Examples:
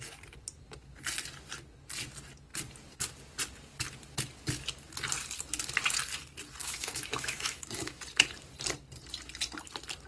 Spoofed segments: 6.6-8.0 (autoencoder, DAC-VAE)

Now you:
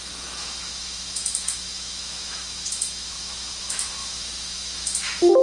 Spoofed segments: 0.0-5.4 (autoencoder, DAC-VAE)